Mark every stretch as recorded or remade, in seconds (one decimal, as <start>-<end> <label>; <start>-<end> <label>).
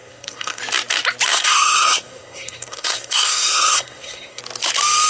0.0-0.6 remade; 0.6-1.3 recorded; 1.3-4.4 remade; 4.4-5.1 recorded